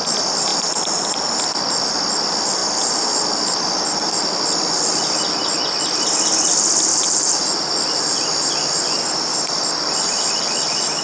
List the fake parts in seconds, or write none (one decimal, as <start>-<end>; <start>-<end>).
2.6-4.1; 6.9-10.2